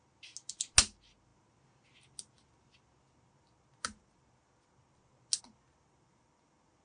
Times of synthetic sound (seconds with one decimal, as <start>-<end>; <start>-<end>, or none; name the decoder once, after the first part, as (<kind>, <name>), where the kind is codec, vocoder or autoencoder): none